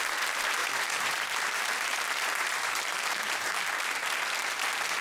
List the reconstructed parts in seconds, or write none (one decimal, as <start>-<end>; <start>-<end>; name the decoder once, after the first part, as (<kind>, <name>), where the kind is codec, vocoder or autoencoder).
0.6-3.6 (vocoder, BigVGAN v2)